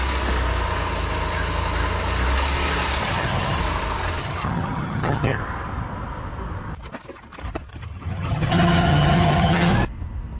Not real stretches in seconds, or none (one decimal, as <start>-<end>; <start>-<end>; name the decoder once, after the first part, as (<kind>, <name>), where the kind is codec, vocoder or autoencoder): 3.0-3.6 (vocoder, HiFi-GAN); 4.2-5.4; 7.7-9.7